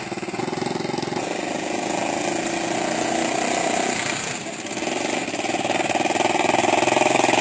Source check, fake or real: real